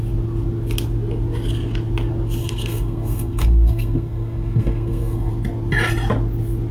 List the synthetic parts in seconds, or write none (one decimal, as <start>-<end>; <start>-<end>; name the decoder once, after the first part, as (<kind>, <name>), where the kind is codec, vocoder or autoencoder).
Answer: 2.4-5.3 (codec, SNAC)